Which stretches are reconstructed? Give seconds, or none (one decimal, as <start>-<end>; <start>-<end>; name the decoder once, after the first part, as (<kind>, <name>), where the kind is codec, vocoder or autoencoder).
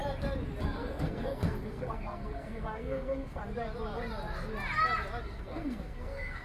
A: 0.6-3.4 (codec, SNAC); 5.2-6.4